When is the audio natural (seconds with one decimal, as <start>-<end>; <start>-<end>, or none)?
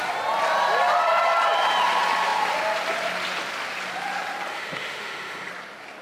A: 0.0-4.5; 5.5-6.0